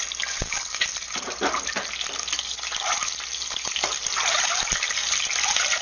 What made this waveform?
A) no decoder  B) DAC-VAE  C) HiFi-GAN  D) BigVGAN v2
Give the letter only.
A